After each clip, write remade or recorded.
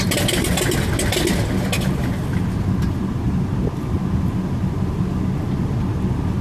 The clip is recorded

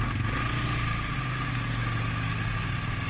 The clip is recorded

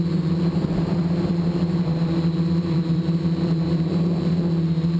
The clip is remade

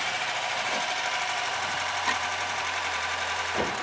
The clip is remade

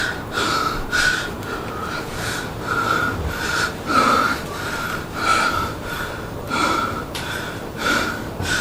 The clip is remade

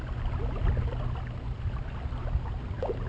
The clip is recorded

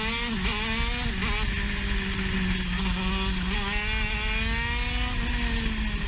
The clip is recorded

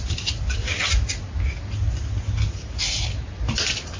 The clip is recorded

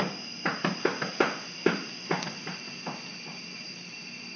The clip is recorded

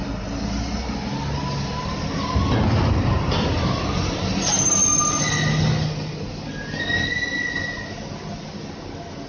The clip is recorded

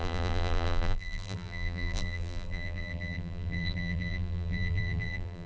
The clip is remade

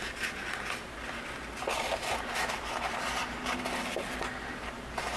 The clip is recorded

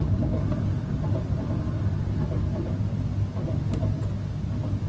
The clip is recorded